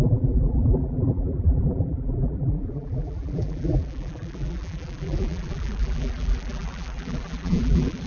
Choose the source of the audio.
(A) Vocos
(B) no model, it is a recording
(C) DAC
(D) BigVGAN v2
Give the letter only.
D